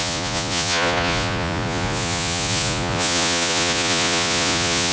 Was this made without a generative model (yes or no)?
no